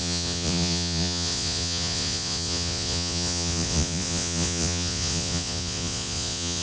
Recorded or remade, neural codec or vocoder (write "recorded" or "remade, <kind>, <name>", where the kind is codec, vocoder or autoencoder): remade, vocoder, Vocos